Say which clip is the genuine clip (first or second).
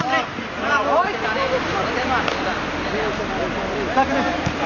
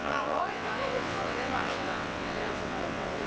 first